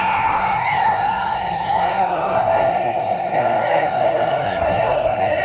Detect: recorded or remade remade